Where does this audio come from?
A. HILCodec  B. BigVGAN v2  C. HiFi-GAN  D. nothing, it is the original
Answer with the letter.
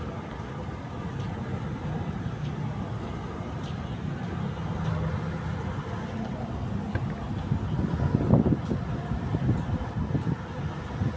D